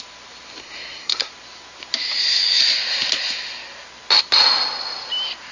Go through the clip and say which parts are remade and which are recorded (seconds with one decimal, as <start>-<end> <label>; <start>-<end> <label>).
0.0-0.6 recorded; 0.6-1.3 remade; 1.3-5.5 recorded